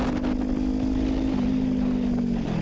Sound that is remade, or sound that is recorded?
recorded